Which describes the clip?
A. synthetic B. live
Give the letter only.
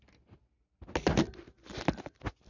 B